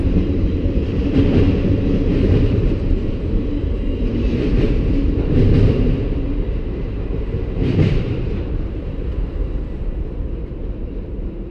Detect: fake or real fake